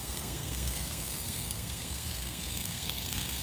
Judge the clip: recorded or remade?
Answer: remade